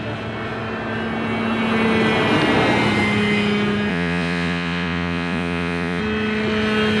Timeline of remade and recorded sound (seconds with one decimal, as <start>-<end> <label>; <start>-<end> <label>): 0.0-3.9 recorded; 3.9-6.0 remade; 6.0-7.0 recorded